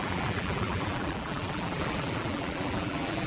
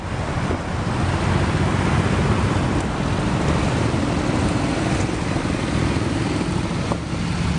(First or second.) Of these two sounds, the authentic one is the second